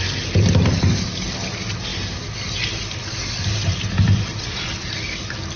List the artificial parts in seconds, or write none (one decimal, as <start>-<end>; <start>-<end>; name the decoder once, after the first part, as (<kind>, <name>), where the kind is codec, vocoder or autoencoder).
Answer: none